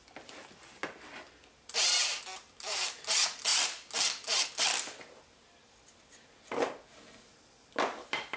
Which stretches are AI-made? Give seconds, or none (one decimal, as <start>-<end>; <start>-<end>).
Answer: none